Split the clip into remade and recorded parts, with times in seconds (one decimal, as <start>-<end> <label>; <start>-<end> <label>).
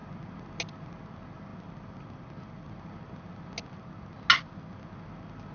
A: 0.0-5.5 recorded